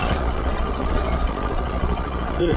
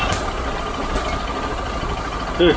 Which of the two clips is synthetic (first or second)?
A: first